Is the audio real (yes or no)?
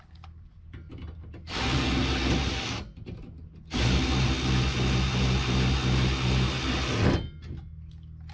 yes